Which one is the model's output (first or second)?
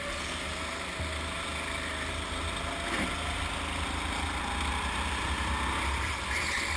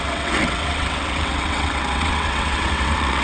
second